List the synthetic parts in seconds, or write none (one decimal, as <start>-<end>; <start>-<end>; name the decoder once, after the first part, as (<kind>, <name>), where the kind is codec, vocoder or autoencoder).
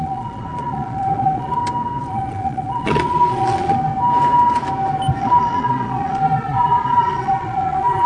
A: 0.0-1.6 (vocoder, Vocos); 2.1-3.9; 5.2-8.1